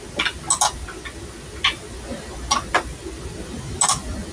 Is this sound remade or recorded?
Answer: recorded